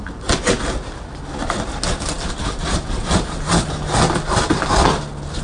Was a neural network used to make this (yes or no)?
no